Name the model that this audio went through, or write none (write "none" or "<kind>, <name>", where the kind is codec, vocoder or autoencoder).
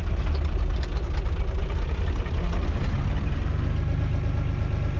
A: none